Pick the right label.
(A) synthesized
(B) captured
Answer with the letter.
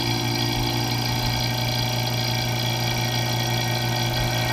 B